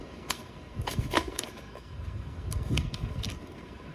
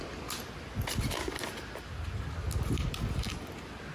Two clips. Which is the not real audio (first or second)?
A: first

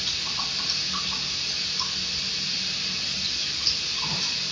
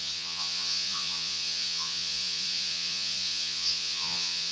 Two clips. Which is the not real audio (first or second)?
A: second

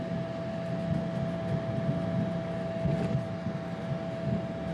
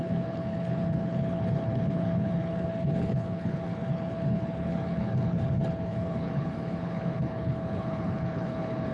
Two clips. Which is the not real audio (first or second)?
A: second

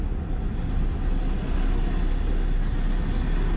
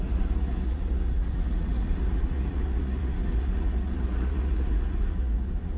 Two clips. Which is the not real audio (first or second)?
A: second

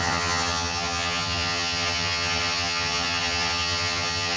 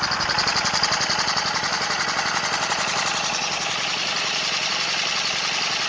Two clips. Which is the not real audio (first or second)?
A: first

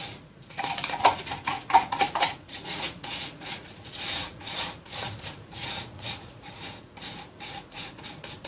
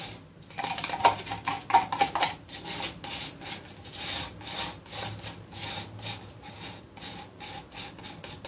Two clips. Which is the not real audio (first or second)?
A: first